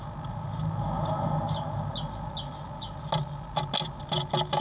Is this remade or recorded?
recorded